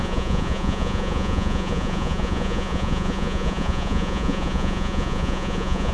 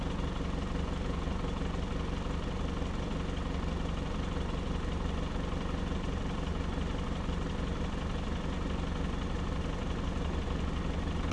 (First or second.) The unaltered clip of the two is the second